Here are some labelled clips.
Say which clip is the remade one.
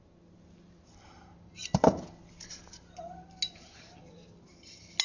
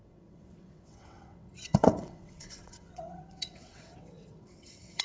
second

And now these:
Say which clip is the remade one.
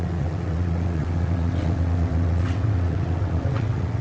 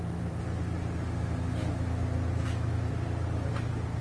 first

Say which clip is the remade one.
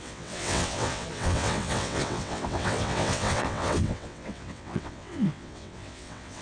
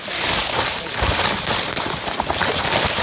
first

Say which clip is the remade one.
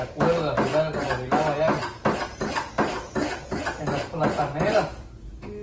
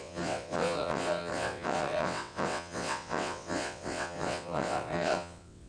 second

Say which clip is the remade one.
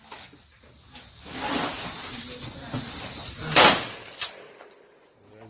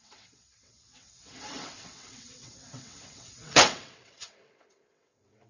second